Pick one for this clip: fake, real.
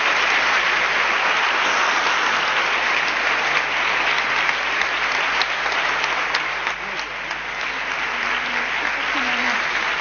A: real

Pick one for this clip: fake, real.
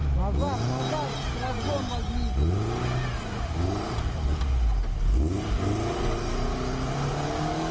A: real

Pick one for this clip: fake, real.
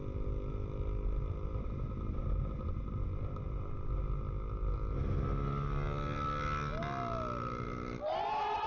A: real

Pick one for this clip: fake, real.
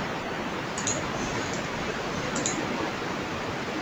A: fake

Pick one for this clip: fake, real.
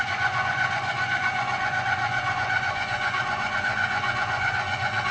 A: fake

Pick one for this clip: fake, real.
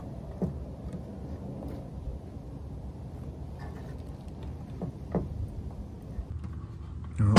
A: real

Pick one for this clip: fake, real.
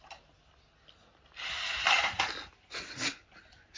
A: real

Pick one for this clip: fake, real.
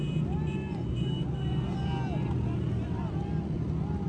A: real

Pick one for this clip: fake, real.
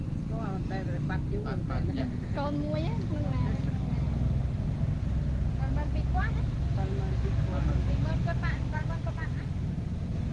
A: real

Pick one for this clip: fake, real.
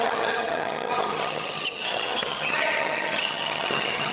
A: fake